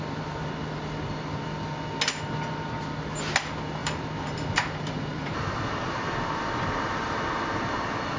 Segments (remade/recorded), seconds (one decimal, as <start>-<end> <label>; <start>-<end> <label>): 0.0-3.8 recorded; 3.8-7.2 remade; 7.2-8.2 recorded